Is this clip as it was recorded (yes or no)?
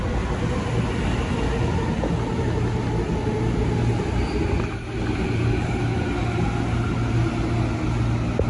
yes